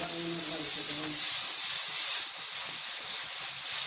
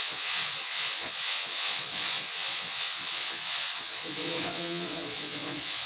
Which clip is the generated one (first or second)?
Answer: second